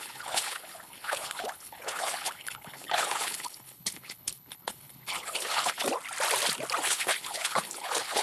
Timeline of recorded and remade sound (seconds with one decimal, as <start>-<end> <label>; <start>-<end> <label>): 0.0-5.8 remade; 5.8-6.8 recorded; 6.8-8.2 remade